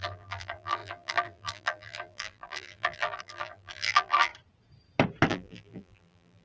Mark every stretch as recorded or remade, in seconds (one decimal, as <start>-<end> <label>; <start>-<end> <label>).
0.0-4.3 remade; 4.3-5.3 recorded; 5.3-6.4 remade